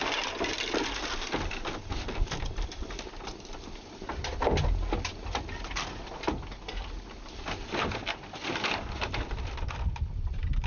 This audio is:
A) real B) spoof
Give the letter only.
A